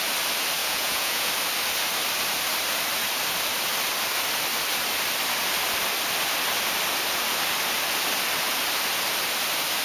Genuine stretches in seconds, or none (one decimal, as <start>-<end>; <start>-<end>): 0.0-0.6; 1.3-9.8